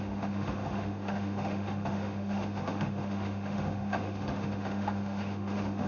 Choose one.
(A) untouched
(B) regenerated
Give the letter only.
B